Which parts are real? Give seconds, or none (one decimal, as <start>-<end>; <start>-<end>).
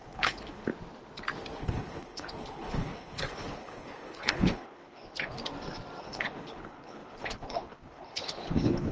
0.7-1.6; 5.4-6.0